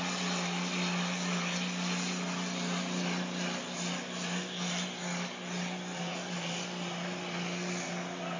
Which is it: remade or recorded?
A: recorded